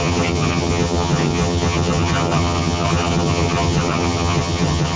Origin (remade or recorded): remade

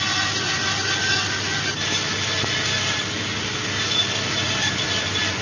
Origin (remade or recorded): recorded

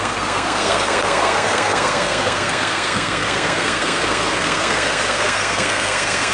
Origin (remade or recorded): remade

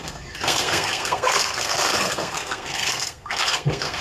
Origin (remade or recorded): remade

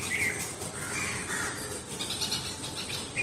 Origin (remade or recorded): recorded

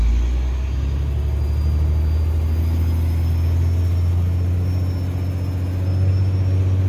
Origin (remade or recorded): recorded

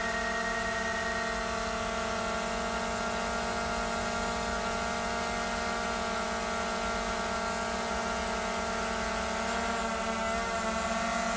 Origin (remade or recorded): recorded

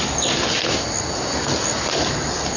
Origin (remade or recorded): recorded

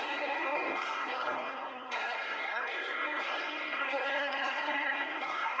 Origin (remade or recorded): remade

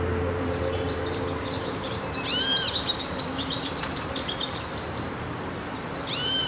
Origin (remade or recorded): remade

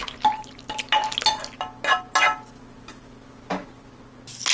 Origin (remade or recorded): recorded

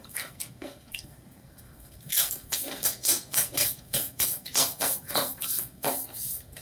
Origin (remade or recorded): remade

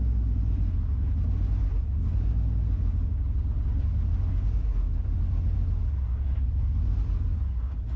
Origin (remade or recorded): recorded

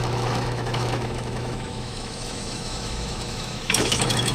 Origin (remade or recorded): remade